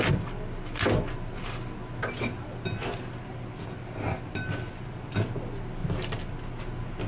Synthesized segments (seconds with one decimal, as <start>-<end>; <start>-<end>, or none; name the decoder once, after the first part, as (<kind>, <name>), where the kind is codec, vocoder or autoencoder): none